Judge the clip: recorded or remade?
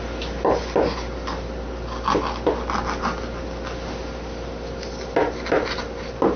recorded